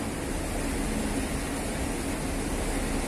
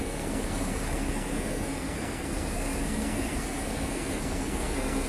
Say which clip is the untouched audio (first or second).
first